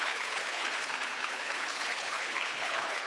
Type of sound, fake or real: fake